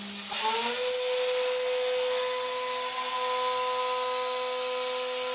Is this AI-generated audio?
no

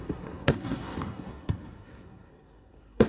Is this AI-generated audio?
yes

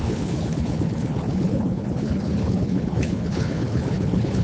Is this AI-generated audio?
yes